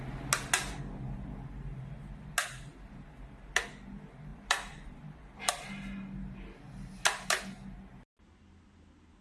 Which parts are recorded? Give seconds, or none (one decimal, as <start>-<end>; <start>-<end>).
0.0-4.3; 5.5-9.2